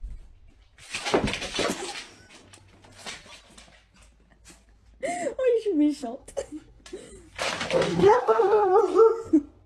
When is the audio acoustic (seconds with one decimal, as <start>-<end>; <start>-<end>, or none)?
0.0-6.2; 6.8-7.9; 8.8-9.7